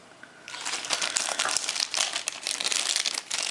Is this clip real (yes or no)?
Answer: yes